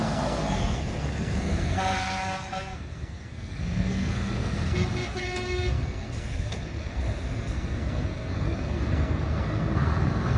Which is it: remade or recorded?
remade